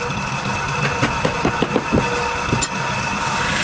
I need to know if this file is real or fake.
real